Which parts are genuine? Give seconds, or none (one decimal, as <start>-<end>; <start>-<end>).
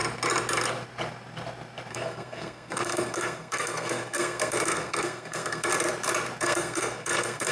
0.0-1.9; 5.7-6.4